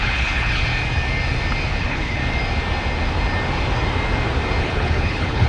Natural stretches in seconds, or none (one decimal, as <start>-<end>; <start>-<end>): 0.7-1.8; 2.2-4.6